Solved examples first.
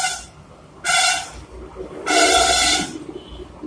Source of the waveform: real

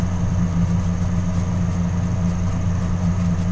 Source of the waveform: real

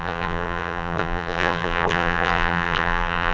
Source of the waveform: fake